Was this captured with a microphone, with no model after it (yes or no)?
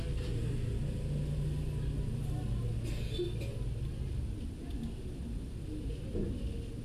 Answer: yes